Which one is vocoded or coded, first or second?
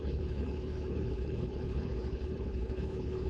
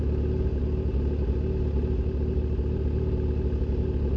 first